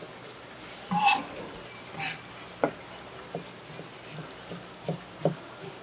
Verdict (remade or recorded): recorded